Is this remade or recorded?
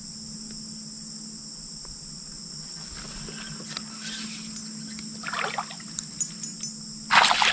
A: recorded